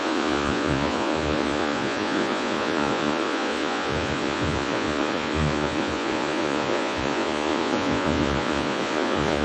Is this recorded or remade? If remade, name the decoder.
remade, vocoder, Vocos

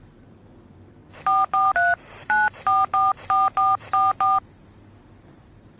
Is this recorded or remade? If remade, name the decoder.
recorded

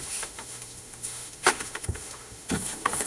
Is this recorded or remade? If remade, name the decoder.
remade, autoencoder, DAC-VAE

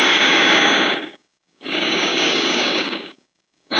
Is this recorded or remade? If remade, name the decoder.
remade, codec, DAC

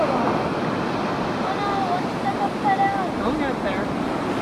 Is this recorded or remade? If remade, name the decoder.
recorded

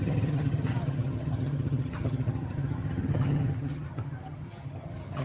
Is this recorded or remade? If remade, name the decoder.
remade, vocoder, HiFi-GAN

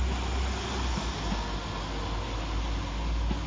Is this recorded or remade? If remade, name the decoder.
recorded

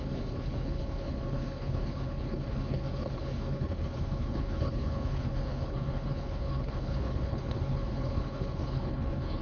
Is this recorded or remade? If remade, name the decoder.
remade, codec, HILCodec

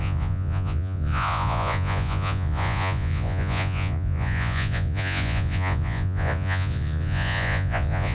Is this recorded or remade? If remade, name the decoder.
remade, vocoder, Vocos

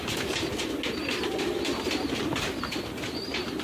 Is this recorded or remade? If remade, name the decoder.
recorded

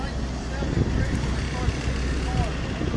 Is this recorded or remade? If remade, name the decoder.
recorded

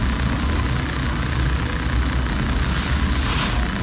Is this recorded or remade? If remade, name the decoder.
recorded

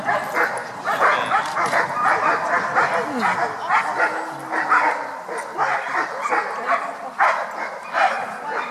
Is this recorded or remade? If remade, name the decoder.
recorded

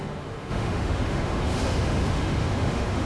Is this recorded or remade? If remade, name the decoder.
remade, autoencoder, DAC-VAE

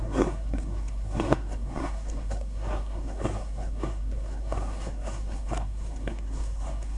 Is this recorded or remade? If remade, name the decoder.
remade, codec, SNAC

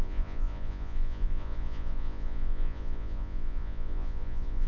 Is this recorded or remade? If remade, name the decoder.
remade, vocoder, Vocos